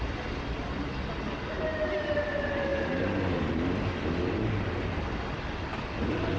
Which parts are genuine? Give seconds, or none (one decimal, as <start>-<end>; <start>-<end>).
0.0-6.4